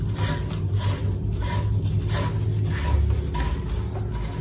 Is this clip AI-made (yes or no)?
no